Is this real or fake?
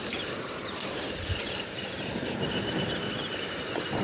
fake